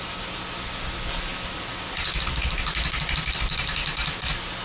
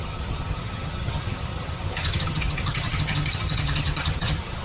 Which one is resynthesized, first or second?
second